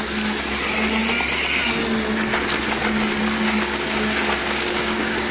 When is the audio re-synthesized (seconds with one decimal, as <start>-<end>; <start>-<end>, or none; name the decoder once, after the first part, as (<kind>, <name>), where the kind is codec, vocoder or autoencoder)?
4.4-5.3 (codec, DAC)